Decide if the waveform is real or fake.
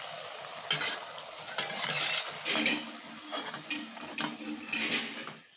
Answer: real